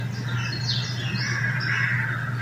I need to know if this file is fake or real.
real